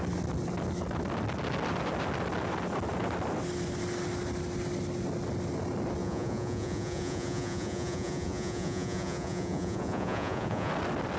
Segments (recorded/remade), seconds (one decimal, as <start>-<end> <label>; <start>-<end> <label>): 0.0-6.0 recorded; 6.0-10.7 remade; 10.7-11.2 recorded